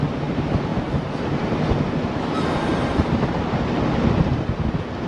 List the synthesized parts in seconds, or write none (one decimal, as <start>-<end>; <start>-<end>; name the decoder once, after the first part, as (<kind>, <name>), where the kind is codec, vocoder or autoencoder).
0.7-1.6 (vocoder, BigVGAN v2); 2.7-3.4